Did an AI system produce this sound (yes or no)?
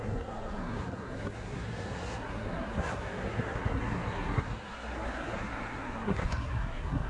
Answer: yes